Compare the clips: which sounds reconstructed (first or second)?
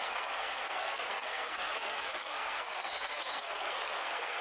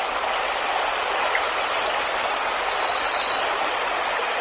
first